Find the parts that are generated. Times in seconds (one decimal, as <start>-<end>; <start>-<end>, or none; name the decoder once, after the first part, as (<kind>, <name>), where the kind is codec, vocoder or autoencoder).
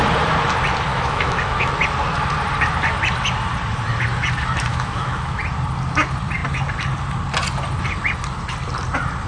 0.9-1.7 (autoencoder, DAC-VAE); 4.7-5.4